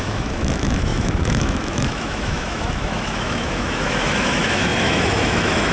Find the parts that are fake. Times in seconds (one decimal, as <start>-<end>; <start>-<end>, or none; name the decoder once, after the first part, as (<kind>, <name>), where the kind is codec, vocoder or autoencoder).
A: 0.0-5.7 (autoencoder, DAC-VAE)